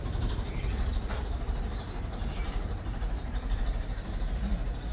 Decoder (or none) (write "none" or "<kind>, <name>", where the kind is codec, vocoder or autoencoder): vocoder, BigVGAN v2